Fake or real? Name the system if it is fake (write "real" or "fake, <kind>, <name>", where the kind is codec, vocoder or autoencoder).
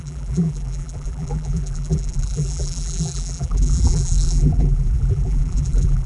fake, vocoder, BigVGAN v2